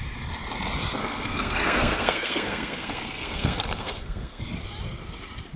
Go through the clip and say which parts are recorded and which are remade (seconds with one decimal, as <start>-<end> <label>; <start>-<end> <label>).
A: 0.0-1.0 recorded; 1.0-4.4 remade; 4.4-5.6 recorded